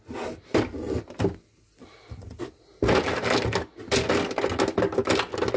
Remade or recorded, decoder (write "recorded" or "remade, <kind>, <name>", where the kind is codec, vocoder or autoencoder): recorded